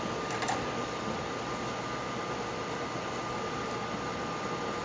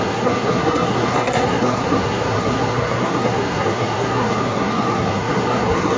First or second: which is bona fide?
first